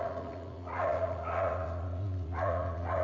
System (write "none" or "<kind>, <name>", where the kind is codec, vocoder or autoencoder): vocoder, Vocos